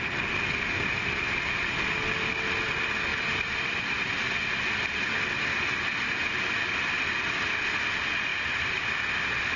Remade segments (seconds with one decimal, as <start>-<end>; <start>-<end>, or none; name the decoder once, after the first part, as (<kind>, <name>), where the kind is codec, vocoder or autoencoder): 3.1-3.8 (vocoder, BigVGAN v2)